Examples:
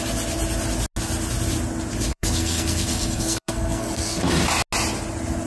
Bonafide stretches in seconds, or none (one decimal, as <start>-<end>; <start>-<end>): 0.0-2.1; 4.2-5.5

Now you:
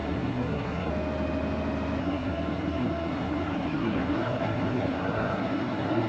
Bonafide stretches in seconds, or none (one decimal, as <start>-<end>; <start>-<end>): 0.9-2.0

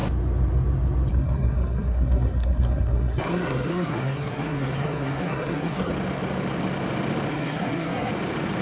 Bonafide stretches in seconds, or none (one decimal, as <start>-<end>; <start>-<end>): 0.0-1.1; 5.9-7.3; 8.1-8.6

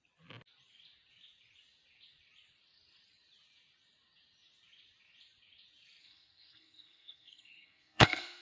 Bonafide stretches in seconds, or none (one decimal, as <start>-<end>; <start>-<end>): 0.0-6.0

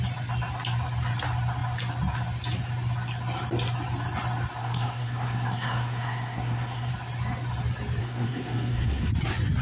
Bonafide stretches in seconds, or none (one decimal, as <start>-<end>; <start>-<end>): 0.0-4.6; 6.9-8.0; 9.1-9.6

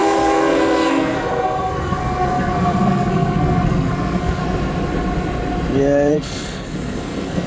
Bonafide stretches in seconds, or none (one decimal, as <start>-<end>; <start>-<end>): 4.4-6.1

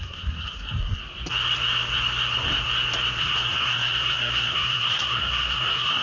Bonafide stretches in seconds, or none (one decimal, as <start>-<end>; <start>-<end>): 1.0-3.2